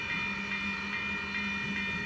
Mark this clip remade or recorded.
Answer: recorded